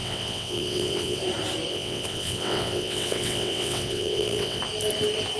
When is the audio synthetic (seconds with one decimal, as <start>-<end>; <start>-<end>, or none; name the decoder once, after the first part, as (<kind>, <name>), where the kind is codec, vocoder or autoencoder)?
0.0-1.2 (vocoder, WaveNeXt); 1.7-4.6